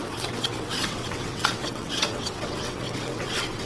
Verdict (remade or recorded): remade